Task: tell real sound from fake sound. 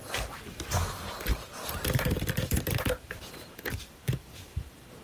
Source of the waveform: fake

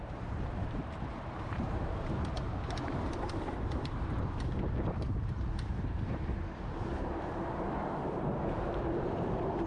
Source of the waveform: fake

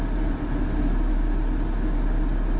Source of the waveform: real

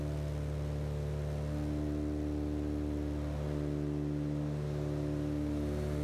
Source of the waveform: real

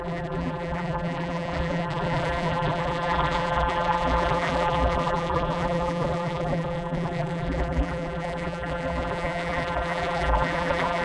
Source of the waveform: fake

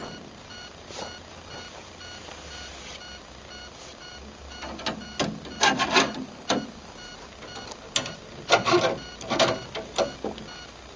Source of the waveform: real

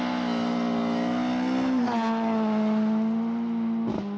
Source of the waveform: real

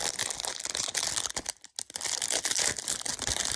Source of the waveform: real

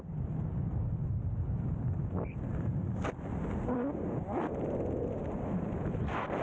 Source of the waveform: real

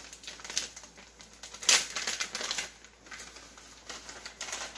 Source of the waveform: real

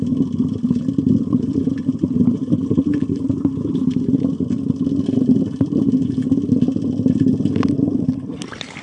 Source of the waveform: real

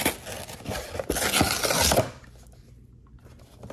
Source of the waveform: real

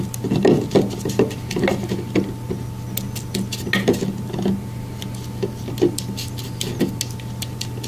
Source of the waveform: real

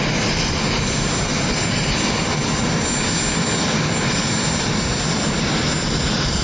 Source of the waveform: real